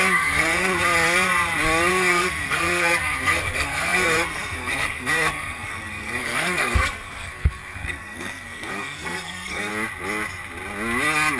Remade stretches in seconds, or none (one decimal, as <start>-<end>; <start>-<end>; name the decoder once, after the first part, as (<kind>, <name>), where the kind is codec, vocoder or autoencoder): 0.0-0.7 (codec, SNAC); 1.9-9.7